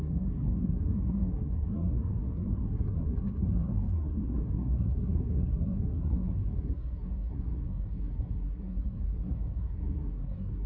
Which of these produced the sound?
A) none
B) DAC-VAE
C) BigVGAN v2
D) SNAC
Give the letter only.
D